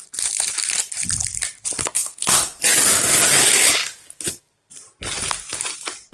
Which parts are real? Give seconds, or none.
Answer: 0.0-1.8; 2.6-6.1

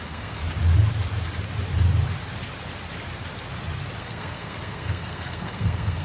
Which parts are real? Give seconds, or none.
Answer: 0.4-4.0